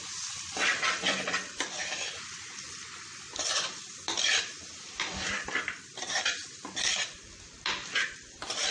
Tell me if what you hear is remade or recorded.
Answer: remade